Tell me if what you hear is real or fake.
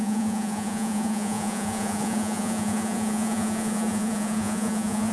fake